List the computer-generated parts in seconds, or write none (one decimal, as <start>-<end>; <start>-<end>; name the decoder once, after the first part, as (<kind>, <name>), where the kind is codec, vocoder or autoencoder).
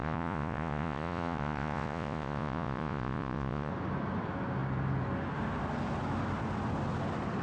0.0-3.7 (vocoder, Vocos)